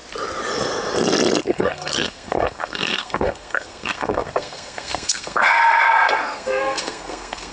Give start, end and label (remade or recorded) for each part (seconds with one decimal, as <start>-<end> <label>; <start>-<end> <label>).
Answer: 0.0-1.4 recorded; 1.4-7.5 remade